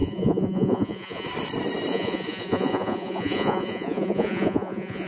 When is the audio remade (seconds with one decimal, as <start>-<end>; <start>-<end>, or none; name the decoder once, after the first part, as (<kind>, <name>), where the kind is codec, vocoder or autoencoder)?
0.0-1.3 (vocoder, Vocos); 1.9-5.1